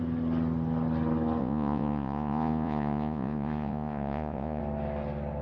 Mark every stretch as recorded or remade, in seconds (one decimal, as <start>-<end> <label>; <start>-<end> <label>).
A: 0.0-1.4 recorded; 1.4-4.6 remade; 4.6-5.4 recorded